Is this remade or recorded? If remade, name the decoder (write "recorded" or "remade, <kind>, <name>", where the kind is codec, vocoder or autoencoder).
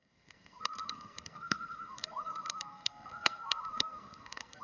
remade, codec, SNAC